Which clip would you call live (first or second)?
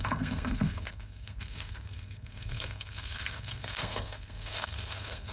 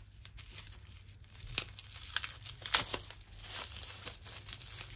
second